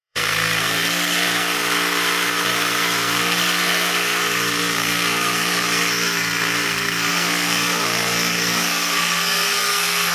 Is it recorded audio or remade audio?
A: remade